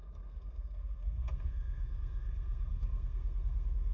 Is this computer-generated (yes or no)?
yes